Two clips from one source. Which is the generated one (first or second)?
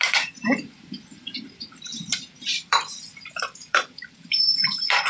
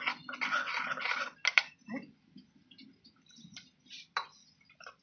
first